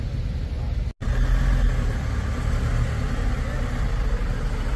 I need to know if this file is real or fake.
real